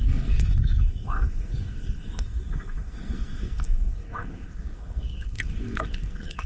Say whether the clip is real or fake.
fake